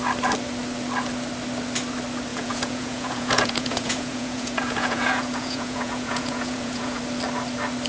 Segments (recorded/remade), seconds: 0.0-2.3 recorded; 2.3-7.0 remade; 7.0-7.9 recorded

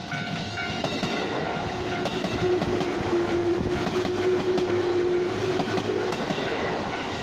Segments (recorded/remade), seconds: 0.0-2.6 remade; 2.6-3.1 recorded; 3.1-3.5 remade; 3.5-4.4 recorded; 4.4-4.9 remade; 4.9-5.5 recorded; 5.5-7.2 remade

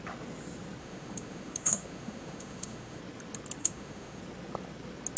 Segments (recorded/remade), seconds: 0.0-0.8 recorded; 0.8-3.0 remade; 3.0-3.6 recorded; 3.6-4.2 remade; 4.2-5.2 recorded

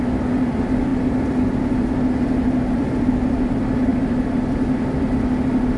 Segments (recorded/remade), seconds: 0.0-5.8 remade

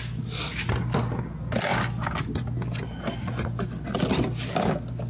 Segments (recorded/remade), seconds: 0.0-5.1 recorded

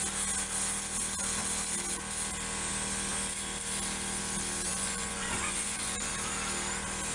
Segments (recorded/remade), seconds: 0.0-4.7 recorded; 4.7-6.1 remade; 6.1-7.1 recorded